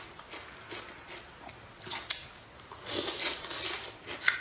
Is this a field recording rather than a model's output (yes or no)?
yes